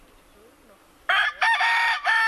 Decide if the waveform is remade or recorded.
recorded